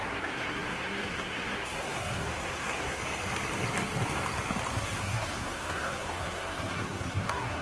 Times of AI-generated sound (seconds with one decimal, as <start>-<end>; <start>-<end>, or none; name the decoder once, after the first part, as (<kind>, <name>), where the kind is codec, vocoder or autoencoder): 0.0-3.0 (codec, SNAC); 4.7-7.6